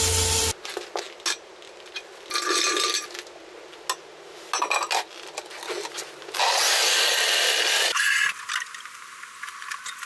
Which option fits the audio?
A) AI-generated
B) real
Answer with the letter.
B